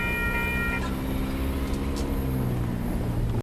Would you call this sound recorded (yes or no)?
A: yes